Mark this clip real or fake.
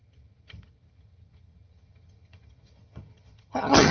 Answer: fake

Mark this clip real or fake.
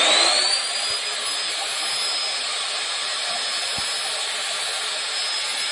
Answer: real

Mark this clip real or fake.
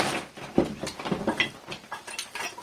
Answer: real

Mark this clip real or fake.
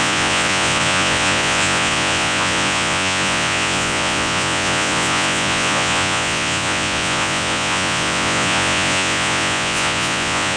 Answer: fake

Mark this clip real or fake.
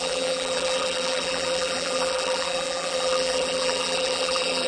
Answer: fake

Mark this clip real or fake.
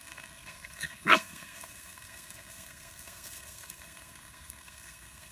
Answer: fake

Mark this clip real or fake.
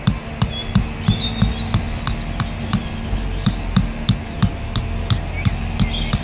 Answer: real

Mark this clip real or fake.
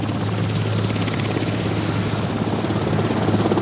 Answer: real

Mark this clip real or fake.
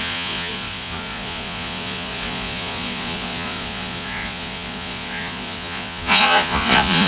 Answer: fake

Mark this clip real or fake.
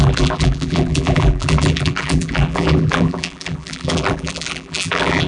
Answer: fake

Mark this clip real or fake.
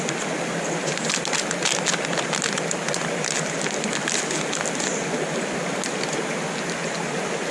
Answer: real